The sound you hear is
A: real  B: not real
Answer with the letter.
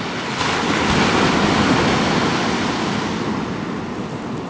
A